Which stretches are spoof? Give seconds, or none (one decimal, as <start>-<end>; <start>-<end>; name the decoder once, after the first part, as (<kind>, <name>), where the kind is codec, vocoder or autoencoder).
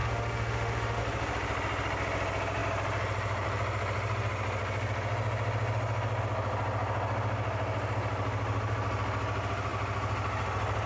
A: 0.0-1.0 (autoencoder, DAC-VAE)